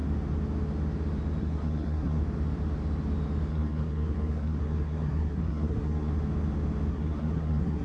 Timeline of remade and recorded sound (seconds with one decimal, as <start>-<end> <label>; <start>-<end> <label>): 0.0-1.4 recorded; 1.4-2.2 remade; 2.2-3.5 recorded; 3.5-6.1 remade; 6.1-6.9 recorded; 6.9-7.8 remade